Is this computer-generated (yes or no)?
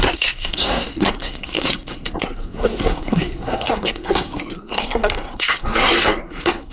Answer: yes